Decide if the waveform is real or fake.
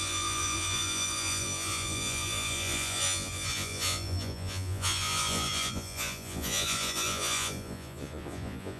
fake